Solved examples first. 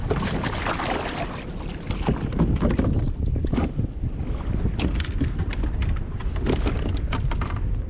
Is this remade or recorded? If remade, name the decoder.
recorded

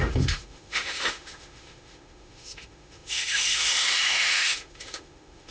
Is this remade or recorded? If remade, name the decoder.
remade, autoencoder, DAC-VAE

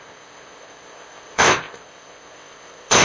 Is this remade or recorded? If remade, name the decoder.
remade, codec, ZipCodec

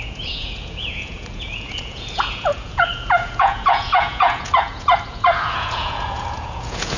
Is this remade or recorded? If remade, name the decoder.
remade, vocoder, Vocos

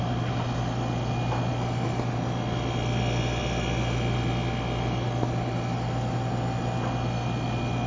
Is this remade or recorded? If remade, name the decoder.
recorded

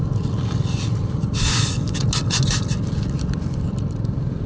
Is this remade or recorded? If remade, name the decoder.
recorded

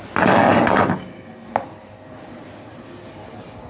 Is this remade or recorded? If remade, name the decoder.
recorded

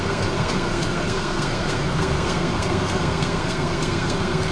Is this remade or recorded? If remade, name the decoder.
remade, codec, SNAC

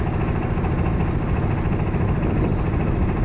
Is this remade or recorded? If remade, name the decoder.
recorded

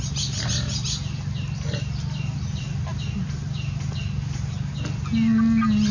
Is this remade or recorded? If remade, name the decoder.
recorded